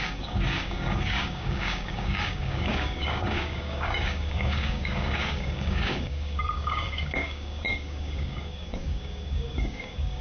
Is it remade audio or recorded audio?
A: remade